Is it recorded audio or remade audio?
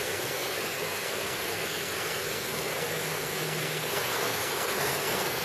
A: remade